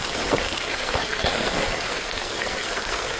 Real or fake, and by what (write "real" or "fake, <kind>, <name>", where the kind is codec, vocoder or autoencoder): fake, codec, SNAC